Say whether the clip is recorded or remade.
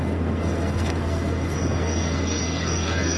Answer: remade